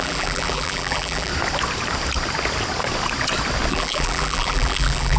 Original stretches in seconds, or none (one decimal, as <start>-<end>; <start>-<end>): 1.3-3.7